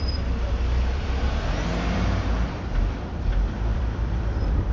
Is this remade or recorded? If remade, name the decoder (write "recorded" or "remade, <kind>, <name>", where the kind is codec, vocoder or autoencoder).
remade, vocoder, BigVGAN v2